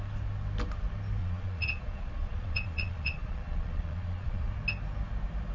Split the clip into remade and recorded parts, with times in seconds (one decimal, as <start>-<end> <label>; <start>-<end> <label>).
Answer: 0.0-1.2 recorded; 1.2-4.5 remade; 4.5-5.5 recorded